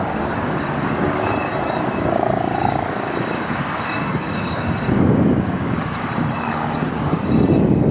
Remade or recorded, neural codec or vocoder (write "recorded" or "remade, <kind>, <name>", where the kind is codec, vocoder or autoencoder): remade, codec, DAC